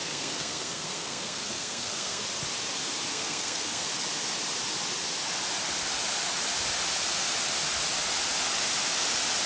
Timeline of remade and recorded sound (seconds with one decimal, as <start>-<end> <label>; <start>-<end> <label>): 0.0-2.2 remade; 2.2-3.1 recorded; 3.1-3.9 remade; 3.9-9.5 recorded

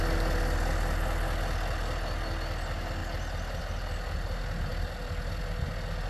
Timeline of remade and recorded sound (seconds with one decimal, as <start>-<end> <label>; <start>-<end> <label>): 0.0-6.1 recorded